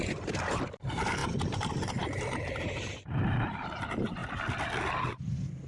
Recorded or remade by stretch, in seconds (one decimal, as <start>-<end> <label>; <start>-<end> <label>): 0.0-4.2 remade; 4.2-5.0 recorded; 5.0-5.7 remade